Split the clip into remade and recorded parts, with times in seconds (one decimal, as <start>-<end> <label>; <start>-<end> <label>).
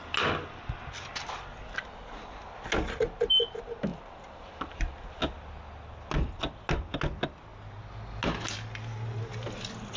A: 0.0-3.9 recorded; 3.9-5.2 remade; 5.2-10.0 recorded